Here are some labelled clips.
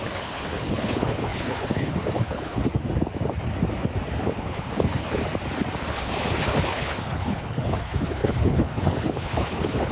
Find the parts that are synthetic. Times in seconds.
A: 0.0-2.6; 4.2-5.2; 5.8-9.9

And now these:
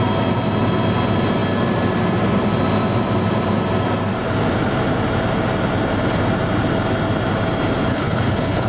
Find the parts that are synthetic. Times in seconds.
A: 7.9-8.7

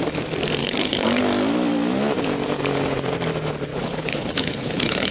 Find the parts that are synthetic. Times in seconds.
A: 0.6-1.2; 3.7-5.1